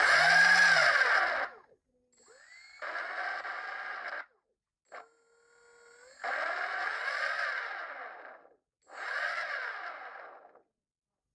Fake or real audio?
real